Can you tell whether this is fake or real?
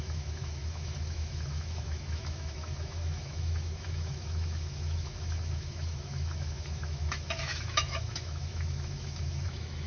fake